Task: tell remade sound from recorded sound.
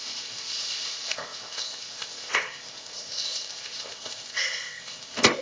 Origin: remade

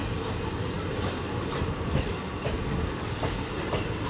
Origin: recorded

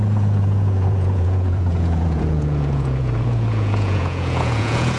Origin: remade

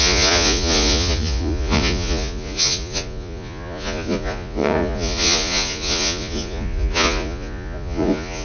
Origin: remade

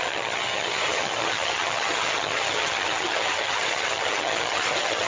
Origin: remade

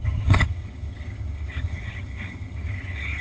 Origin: remade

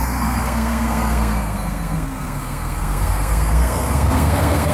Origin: remade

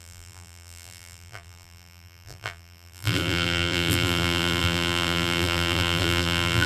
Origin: remade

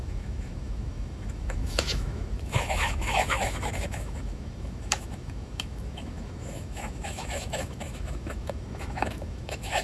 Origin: remade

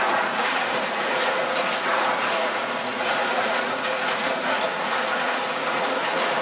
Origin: remade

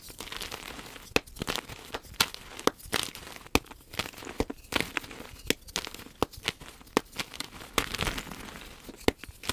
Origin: recorded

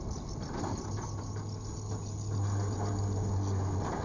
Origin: recorded